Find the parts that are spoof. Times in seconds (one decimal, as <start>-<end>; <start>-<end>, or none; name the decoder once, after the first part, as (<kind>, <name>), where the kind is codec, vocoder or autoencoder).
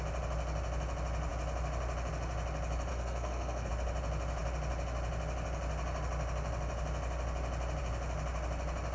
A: 2.9-3.7 (codec, SNAC)